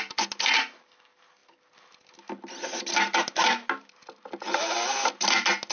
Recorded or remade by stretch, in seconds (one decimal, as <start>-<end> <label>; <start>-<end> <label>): 0.0-5.7 recorded

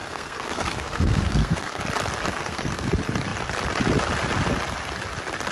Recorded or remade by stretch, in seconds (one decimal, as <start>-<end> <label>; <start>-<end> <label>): 0.0-1.8 remade; 1.8-2.3 recorded; 2.3-2.9 remade; 2.9-5.5 recorded

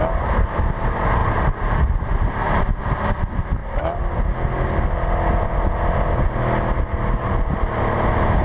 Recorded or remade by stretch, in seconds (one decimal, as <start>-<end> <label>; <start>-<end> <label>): 0.0-8.4 recorded

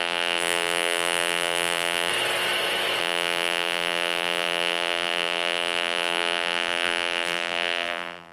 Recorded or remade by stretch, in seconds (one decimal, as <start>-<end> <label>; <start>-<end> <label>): 0.0-2.1 remade; 2.1-3.0 recorded; 3.0-8.3 remade

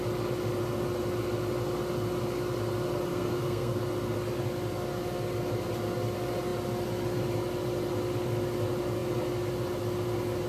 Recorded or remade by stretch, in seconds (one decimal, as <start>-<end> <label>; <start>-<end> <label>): 0.0-3.1 recorded; 3.1-3.8 remade; 3.8-10.5 recorded

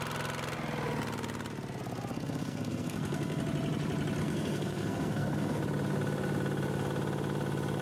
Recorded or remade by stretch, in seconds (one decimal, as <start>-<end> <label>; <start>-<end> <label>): 0.0-2.1 recorded; 2.1-3.4 remade; 3.4-4.2 recorded; 4.2-5.6 remade; 5.6-7.8 recorded

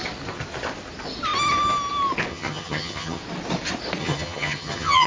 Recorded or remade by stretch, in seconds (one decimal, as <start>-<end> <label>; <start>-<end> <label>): 0.0-2.3 recorded; 2.3-3.2 remade; 3.2-4.0 recorded; 4.0-5.1 remade